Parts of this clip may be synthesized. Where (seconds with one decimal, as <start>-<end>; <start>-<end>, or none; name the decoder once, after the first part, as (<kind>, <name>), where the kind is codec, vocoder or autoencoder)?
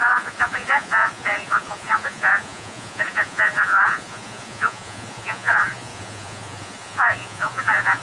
0.0-8.0 (vocoder, Vocos)